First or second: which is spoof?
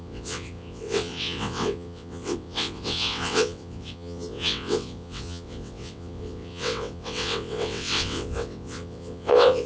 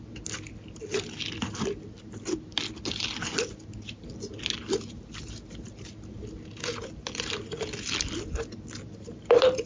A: first